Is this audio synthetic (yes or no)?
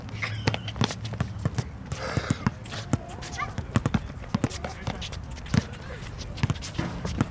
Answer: no